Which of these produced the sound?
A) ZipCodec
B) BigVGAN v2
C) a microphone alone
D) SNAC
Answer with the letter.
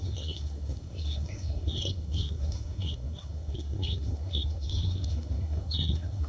D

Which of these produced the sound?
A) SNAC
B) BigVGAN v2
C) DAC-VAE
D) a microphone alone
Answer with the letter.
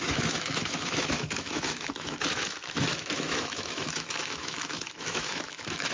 C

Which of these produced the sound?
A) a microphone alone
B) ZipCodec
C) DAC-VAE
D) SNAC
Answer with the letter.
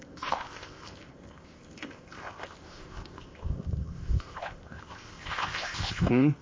B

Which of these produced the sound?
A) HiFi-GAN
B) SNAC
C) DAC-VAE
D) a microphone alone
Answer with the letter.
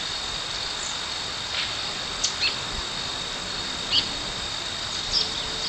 D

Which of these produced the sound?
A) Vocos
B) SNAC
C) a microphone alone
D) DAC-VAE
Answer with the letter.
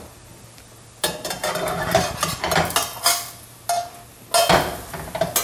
C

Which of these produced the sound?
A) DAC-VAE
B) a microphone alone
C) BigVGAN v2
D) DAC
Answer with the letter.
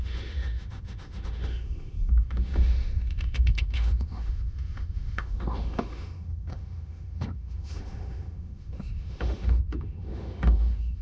A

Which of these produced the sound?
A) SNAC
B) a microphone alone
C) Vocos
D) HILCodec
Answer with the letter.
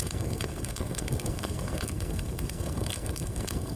A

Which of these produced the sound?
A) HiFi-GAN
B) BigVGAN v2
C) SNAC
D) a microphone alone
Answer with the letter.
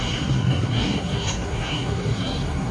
C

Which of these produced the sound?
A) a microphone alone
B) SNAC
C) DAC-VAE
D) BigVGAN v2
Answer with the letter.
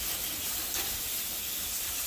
A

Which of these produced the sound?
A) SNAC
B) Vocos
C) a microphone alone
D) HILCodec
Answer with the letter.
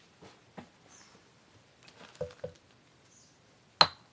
C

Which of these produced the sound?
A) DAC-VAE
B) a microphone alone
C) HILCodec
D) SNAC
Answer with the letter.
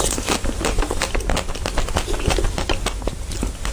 B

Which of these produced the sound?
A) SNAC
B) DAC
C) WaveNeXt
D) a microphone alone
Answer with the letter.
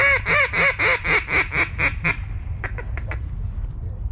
D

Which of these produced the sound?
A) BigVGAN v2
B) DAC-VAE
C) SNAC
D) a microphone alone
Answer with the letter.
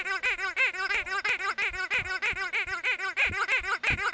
D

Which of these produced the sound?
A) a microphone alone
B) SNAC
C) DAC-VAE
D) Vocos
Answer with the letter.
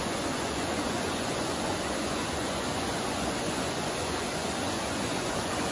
D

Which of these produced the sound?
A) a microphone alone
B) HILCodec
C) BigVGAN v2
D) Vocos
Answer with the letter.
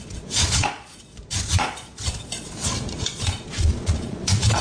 D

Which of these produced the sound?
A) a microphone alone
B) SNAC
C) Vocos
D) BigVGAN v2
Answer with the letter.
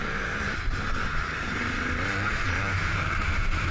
D